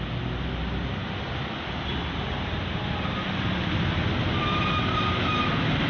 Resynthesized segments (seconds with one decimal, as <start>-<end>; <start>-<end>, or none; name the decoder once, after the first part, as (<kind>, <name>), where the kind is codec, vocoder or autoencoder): none

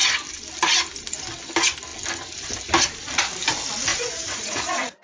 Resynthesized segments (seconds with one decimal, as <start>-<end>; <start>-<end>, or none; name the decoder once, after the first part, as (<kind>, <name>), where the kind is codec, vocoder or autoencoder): 3.9-5.0 (vocoder, Vocos)

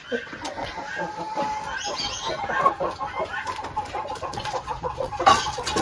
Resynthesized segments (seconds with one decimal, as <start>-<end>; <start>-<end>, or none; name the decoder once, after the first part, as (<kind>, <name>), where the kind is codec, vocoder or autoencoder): 0.0-0.7 (vocoder, WaveNeXt); 4.2-5.8

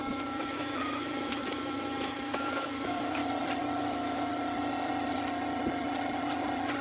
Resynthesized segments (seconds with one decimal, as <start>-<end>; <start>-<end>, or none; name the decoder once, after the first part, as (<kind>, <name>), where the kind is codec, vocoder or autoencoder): 0.0-3.2 (autoencoder, DAC-VAE); 3.8-4.3

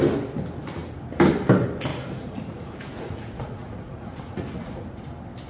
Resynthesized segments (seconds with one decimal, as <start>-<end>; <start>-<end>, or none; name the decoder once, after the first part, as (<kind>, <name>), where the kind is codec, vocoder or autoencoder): 1.9-5.0 (vocoder, Vocos)